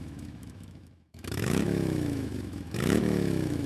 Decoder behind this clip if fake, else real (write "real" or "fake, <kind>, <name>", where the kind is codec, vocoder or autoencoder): fake, autoencoder, DAC-VAE